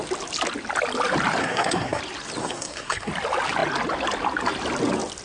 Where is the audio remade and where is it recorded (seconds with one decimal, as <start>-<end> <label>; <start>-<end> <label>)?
0.0-1.4 recorded; 1.4-2.0 remade; 2.0-2.4 recorded; 2.4-3.1 remade; 3.1-5.2 recorded